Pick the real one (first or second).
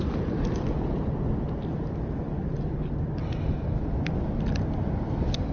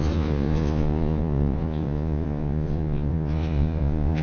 first